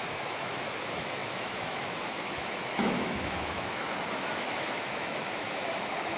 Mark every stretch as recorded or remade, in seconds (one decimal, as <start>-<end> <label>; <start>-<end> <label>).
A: 0.0-6.2 remade